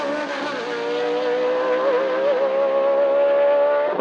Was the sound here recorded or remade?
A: recorded